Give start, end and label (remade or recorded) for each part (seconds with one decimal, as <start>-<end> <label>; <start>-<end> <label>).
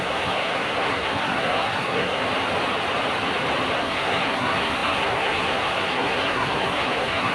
0.0-2.2 remade; 2.2-3.8 recorded; 3.8-7.3 remade